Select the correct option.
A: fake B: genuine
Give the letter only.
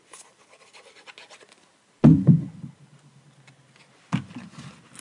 B